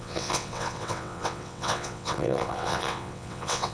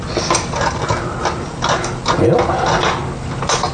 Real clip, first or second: second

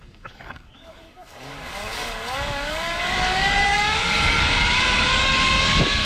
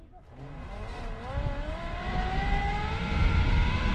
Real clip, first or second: second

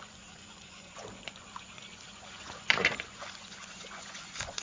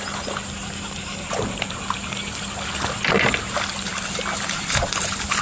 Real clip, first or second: second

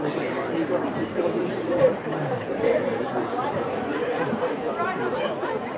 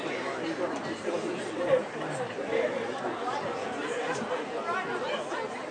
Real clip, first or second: second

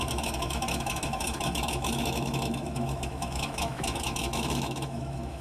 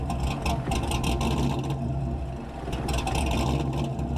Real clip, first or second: second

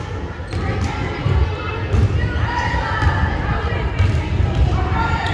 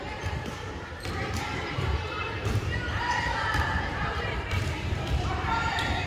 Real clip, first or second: first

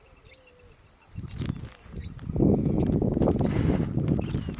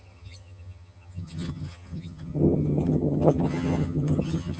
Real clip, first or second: first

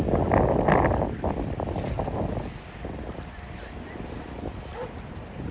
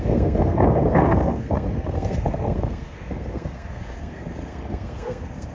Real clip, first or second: first